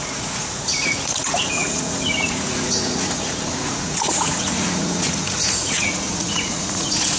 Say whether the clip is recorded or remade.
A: remade